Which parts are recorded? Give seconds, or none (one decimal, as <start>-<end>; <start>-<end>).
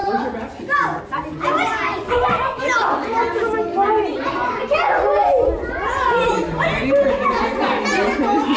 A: 0.0-8.6